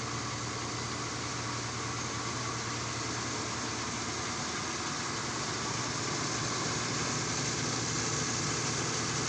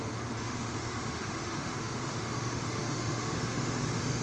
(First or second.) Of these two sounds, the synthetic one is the second